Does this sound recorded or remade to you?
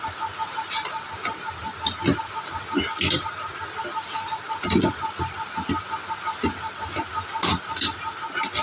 recorded